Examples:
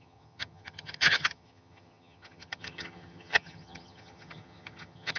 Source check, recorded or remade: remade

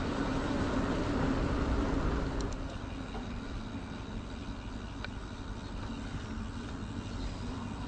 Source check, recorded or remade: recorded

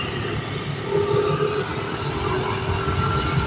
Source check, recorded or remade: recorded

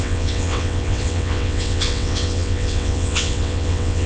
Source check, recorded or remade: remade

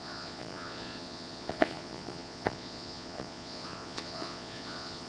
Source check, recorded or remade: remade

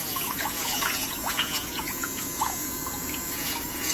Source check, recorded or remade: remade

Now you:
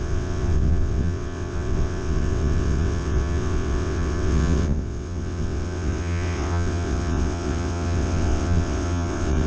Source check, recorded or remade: remade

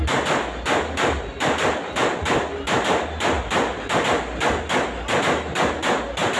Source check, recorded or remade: recorded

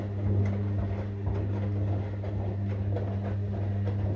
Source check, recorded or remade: recorded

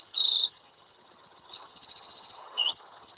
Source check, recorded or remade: remade